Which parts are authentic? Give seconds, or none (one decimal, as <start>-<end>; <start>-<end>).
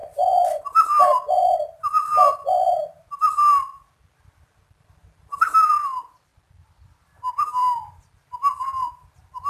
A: 6.3-7.3